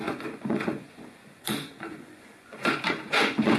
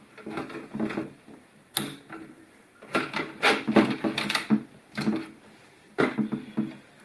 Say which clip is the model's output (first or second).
first